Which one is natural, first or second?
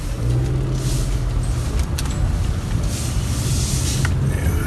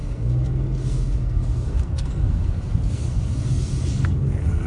first